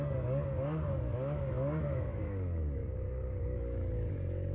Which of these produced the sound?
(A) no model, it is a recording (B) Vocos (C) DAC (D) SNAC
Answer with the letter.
C